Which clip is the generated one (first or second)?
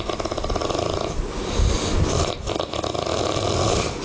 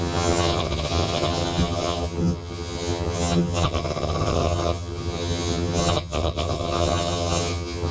second